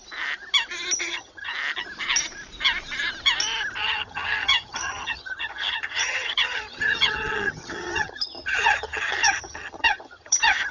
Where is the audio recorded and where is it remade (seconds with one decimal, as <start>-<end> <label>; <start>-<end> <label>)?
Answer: 0.0-1.0 recorded; 1.0-1.5 remade; 1.5-3.8 recorded; 3.8-10.7 remade